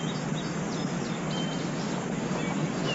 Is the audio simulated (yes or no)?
no